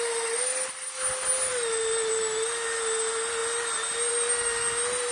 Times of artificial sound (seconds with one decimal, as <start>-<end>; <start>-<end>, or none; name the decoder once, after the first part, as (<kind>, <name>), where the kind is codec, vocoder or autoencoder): none